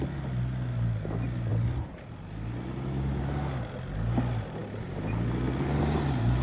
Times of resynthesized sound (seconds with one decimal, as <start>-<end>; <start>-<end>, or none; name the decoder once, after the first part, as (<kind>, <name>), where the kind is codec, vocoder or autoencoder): none